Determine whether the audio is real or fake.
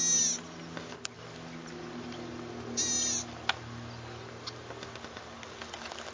real